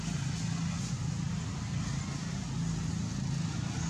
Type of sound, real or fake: real